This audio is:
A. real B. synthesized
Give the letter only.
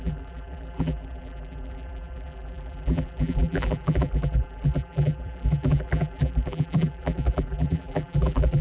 B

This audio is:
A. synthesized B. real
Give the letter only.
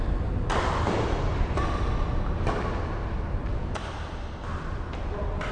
B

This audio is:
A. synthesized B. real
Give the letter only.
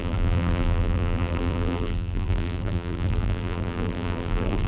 A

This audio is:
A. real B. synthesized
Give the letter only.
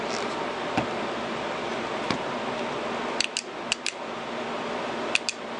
A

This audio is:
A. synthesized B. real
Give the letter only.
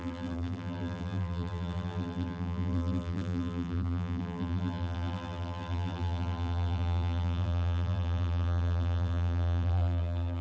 A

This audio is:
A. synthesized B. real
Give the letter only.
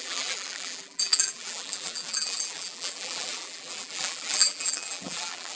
A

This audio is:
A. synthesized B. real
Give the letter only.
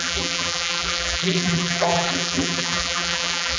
A